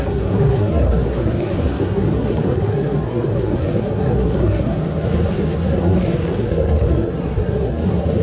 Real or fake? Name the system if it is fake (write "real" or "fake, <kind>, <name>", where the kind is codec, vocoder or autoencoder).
fake, codec, SNAC